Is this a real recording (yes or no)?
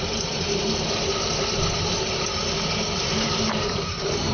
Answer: no